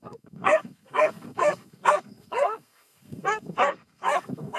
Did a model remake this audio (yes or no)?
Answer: yes